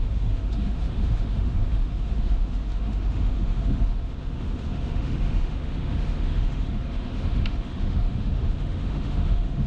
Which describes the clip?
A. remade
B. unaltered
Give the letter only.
A